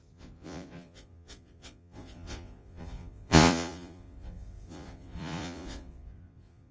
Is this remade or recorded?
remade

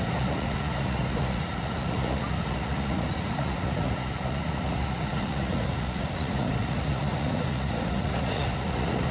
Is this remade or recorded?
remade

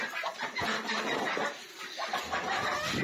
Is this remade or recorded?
recorded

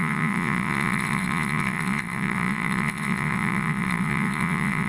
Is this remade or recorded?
remade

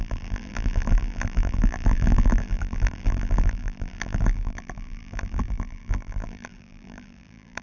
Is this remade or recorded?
remade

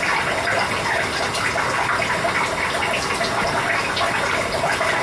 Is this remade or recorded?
recorded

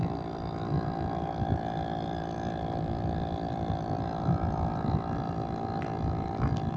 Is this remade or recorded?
recorded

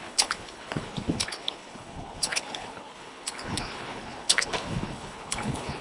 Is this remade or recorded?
remade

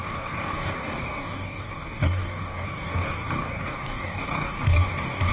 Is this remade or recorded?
remade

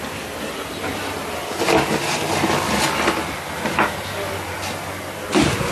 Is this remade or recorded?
remade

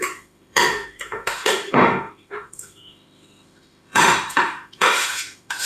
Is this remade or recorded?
remade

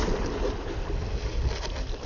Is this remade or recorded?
recorded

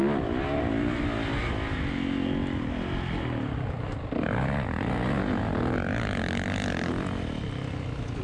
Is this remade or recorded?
recorded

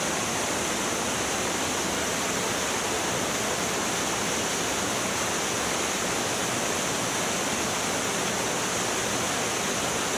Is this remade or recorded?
recorded